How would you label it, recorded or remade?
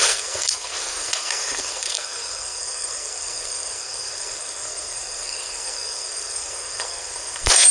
remade